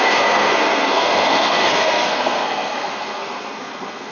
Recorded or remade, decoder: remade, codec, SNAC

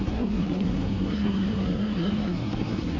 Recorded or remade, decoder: remade, codec, SNAC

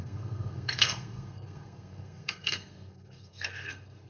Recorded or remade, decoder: remade, codec, SNAC